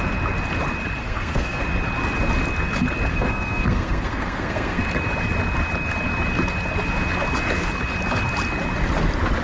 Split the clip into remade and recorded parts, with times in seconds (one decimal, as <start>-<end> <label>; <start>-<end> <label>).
0.0-1.0 recorded; 1.0-1.6 remade; 1.6-3.1 recorded; 3.1-4.8 remade; 4.8-9.4 recorded

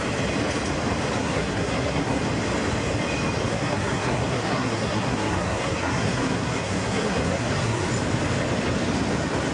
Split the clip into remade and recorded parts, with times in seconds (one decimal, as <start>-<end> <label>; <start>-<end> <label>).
0.0-1.2 recorded; 1.2-2.2 remade; 2.2-3.5 recorded; 3.5-7.9 remade; 7.9-9.5 recorded

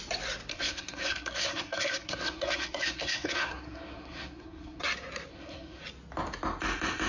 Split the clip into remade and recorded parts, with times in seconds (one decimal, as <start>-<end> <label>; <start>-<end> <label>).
0.0-0.5 recorded; 0.5-4.8 remade; 4.8-5.3 recorded; 5.3-5.8 remade; 5.8-7.1 recorded